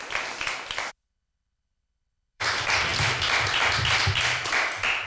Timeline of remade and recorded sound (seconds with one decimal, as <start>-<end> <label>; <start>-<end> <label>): 0.0-5.1 remade